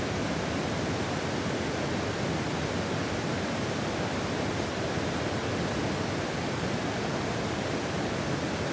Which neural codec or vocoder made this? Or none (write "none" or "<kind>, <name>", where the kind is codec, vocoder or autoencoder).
none